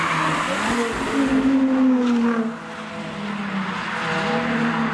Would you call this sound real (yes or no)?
yes